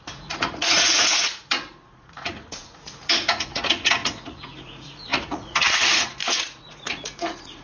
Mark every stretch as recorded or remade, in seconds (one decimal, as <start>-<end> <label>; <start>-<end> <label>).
0.0-7.6 remade